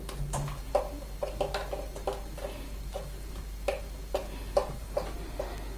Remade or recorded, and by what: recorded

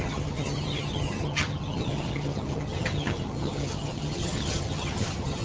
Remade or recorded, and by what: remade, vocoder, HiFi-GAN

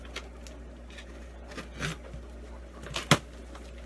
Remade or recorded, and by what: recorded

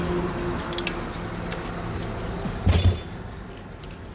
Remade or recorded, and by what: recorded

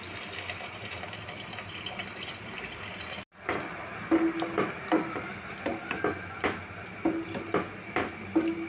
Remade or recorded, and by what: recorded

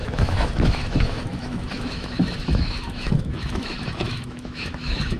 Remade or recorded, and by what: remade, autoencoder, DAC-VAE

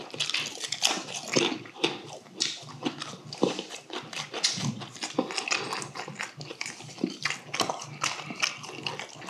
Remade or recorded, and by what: recorded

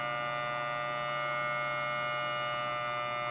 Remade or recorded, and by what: recorded